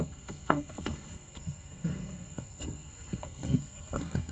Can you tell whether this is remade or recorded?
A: remade